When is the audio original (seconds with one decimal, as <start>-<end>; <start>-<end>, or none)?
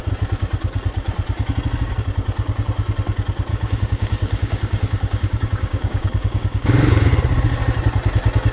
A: 0.0-3.5; 7.1-8.5